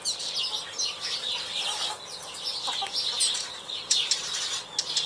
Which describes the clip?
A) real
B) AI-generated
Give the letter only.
A